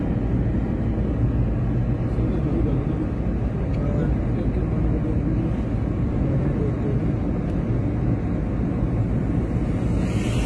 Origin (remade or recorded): recorded